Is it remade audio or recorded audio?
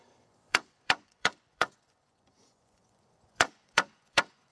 remade